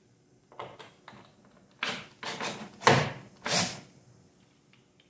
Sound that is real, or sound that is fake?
real